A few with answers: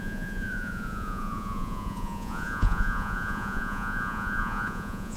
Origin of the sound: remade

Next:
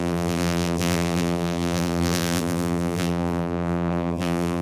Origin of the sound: remade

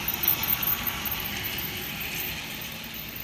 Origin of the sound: recorded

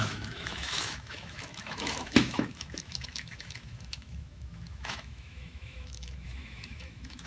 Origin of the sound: remade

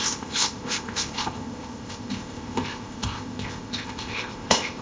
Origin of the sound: remade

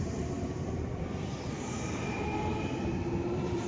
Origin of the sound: remade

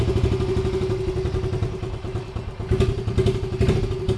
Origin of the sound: recorded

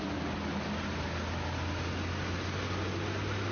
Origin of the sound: recorded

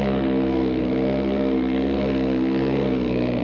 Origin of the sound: remade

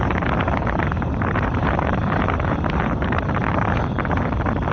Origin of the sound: remade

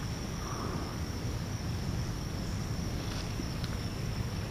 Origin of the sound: remade